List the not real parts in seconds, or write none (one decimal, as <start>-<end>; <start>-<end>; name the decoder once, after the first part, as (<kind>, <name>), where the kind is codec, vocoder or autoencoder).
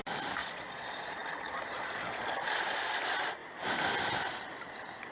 0.4-3.0 (vocoder, Vocos)